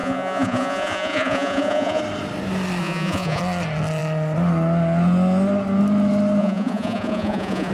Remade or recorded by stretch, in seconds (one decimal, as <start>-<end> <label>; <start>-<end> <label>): 0.0-2.0 remade; 2.0-2.8 recorded; 2.8-3.4 remade; 3.4-6.4 recorded; 6.4-7.7 remade